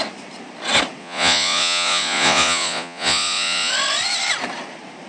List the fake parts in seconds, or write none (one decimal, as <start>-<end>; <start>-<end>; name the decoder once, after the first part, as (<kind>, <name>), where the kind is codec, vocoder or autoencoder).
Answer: 1.0-3.7 (vocoder, Vocos)

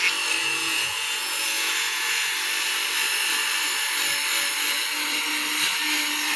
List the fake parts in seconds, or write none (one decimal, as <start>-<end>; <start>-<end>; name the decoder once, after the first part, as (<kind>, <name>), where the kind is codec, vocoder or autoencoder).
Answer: 0.4-2.3 (vocoder, Vocos)

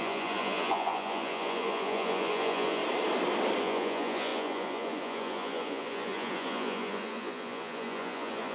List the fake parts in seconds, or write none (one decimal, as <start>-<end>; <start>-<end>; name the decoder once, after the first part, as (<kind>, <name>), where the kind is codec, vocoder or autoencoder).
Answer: 0.0-2.8 (vocoder, Vocos); 3.6-8.5

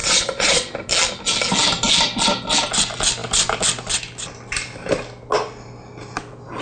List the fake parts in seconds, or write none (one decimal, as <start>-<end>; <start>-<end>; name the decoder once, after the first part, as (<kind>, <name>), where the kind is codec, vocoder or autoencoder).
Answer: 0.0-0.7 (vocoder, Vocos)

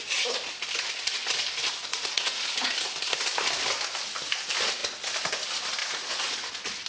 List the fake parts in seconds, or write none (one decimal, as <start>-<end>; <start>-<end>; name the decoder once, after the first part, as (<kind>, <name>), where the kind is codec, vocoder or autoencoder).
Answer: 1.9-2.7 (vocoder, Vocos); 5.8-6.5

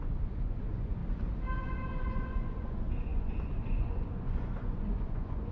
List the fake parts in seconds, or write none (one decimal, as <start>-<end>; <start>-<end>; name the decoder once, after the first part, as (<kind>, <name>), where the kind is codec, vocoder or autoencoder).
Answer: 0.0-1.0 (vocoder, Vocos); 1.6-5.5